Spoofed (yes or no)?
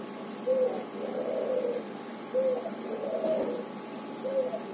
no